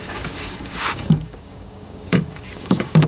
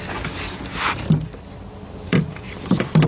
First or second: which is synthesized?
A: first